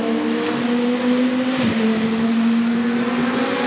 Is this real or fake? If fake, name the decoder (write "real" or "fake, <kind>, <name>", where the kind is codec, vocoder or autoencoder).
real